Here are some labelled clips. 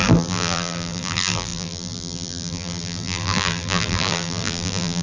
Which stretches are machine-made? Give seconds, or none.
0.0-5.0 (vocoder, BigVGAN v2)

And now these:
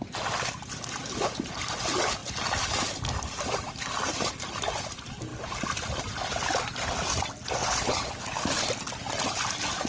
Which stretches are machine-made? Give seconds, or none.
7.6-8.6 (codec, HILCodec)

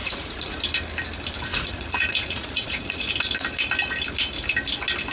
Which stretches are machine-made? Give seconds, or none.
0.0-0.5 (vocoder, Vocos); 1.5-3.1